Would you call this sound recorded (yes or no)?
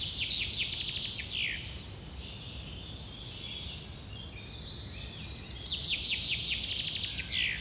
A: yes